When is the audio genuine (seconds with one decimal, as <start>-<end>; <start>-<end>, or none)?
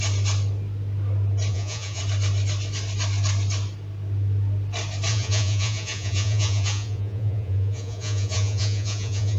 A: 0.0-1.5; 2.0-5.1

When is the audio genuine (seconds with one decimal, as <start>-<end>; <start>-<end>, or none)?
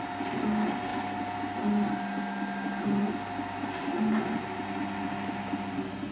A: 0.0-6.1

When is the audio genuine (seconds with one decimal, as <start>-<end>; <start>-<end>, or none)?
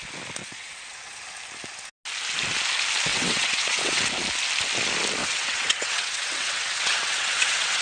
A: 0.0-0.4; 1.2-3.1; 4.0-5.2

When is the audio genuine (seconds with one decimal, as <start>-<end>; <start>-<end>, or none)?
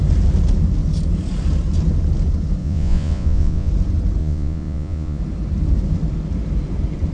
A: 0.0-2.6; 3.7-4.2; 5.2-7.1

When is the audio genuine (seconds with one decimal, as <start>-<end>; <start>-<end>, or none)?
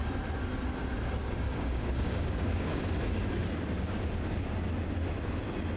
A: 0.0-1.2; 2.8-5.8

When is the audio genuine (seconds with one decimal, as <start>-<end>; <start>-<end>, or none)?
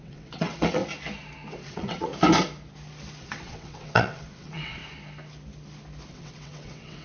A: 0.8-1.5; 2.1-3.2; 4.8-6.1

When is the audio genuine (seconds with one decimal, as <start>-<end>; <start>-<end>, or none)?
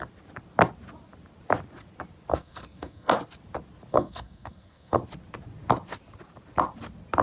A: 0.0-2.3; 3.1-3.9; 5.0-7.2